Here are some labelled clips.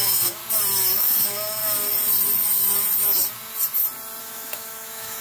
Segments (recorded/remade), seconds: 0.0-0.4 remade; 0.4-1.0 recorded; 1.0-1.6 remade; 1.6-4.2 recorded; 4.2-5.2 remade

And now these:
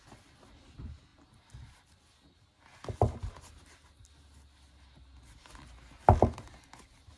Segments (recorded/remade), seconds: 0.0-7.2 recorded

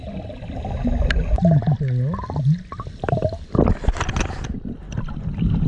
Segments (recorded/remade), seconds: 0.0-5.7 recorded

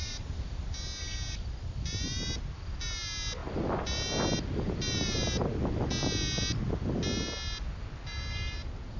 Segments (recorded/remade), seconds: 0.0-9.0 recorded

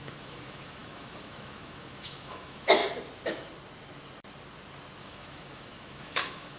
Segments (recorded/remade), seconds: 0.0-2.8 remade; 2.8-5.0 recorded; 5.0-6.6 remade

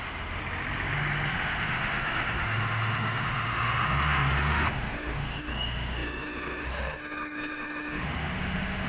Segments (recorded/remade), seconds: 0.0-0.4 remade; 0.4-1.3 recorded; 1.3-8.9 remade

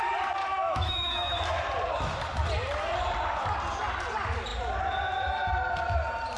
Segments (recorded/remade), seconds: 0.0-0.4 recorded; 0.4-1.4 remade; 1.4-6.4 recorded

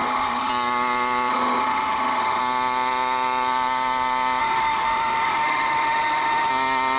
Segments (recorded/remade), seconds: 0.0-0.5 remade; 0.5-1.3 recorded; 1.3-2.4 remade; 2.4-4.4 recorded; 4.4-6.5 remade; 6.5-7.0 recorded